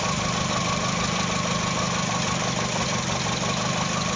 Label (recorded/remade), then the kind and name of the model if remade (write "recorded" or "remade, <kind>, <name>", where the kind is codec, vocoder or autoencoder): recorded